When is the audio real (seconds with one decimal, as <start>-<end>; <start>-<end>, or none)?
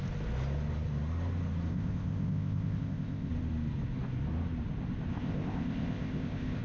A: 0.0-1.7; 3.3-5.1